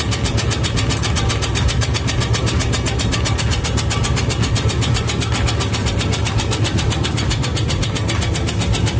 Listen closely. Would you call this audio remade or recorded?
recorded